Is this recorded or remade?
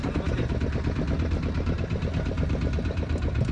recorded